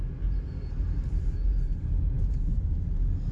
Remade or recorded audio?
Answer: recorded